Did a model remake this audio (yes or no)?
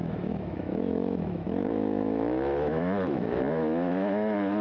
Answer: yes